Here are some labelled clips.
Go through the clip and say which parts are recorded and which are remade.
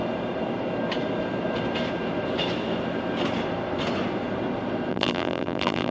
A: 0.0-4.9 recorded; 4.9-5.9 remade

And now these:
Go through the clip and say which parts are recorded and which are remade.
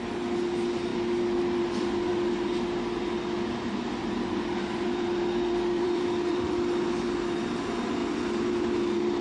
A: 0.0-0.9 remade; 0.9-1.6 recorded; 1.6-2.1 remade; 2.1-3.7 recorded; 3.7-9.2 remade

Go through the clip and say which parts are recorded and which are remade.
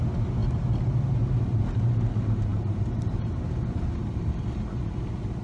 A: 0.0-5.4 recorded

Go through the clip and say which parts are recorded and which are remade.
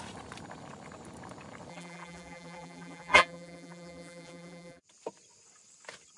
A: 0.0-1.7 recorded; 1.7-4.8 remade; 4.8-6.2 recorded